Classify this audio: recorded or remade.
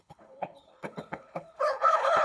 remade